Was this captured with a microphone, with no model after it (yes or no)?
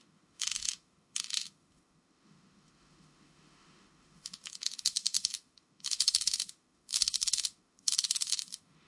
no